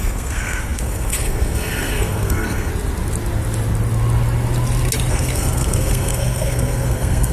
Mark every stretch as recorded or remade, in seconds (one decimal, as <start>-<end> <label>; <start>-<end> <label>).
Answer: 0.0-2.7 remade; 2.7-5.1 recorded; 5.1-7.3 remade